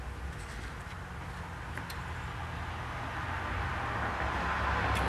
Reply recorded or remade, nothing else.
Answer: recorded